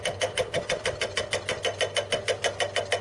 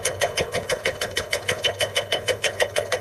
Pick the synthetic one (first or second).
second